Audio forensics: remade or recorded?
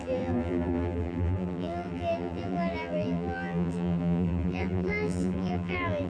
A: remade